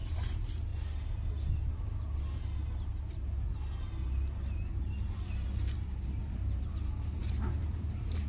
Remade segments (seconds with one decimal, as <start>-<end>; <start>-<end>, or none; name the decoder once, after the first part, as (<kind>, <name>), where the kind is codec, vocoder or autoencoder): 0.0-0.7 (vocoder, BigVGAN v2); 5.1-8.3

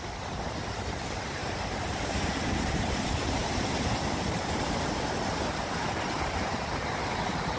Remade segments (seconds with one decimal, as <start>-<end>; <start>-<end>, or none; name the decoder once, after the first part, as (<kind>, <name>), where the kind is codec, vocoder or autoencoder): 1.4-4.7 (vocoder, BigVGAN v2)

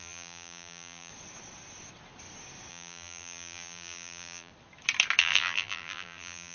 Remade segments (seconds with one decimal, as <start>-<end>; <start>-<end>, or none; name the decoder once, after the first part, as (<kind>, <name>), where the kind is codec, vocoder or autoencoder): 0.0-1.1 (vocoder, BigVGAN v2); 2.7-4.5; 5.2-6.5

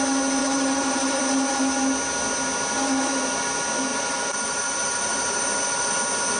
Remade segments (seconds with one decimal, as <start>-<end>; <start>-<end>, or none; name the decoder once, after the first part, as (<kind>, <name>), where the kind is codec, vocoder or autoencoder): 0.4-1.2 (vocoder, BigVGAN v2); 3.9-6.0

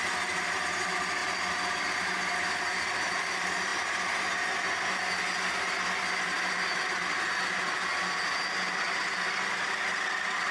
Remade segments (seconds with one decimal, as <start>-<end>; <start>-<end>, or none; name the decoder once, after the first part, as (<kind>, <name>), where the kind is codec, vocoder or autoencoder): 0.0-1.2 (vocoder, BigVGAN v2); 1.7-3.7; 7.5-7.9; 9.3-10.5

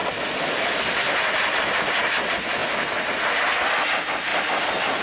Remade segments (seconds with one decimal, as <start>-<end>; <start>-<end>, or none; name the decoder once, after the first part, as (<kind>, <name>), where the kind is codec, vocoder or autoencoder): 0.0-0.8 (vocoder, BigVGAN v2); 4.3-5.0

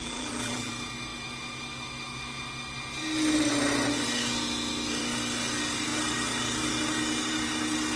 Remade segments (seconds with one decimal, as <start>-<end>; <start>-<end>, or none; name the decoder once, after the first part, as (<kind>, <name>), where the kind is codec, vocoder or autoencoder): 0.0-0.7 (vocoder, BigVGAN v2)